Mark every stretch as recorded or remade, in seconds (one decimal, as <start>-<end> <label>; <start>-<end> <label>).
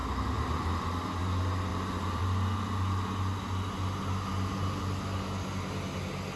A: 0.0-1.7 recorded; 1.7-2.2 remade; 2.2-6.4 recorded